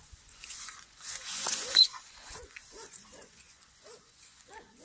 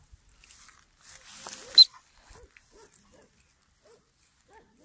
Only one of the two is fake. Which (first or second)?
first